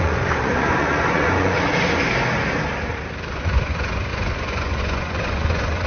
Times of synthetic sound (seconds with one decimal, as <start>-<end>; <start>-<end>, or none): 0.0-1.7; 3.3-5.9